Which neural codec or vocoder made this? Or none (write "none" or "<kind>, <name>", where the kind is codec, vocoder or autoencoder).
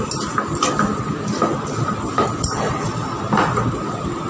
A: none